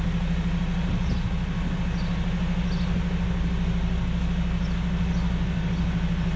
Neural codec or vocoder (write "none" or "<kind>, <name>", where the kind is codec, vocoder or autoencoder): none